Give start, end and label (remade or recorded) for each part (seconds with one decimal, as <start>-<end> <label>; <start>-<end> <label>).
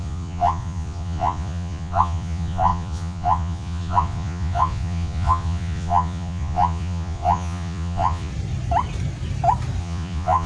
0.0-8.3 remade; 8.3-9.8 recorded; 9.8-10.5 remade